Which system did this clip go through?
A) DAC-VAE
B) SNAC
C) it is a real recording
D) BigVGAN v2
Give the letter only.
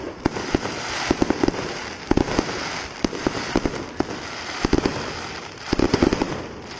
D